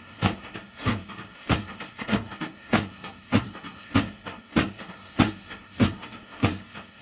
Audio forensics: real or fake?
fake